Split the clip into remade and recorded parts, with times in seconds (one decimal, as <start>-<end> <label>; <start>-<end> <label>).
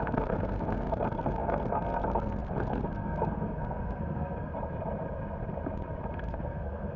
0.0-4.5 remade; 4.5-6.1 recorded; 6.1-7.0 remade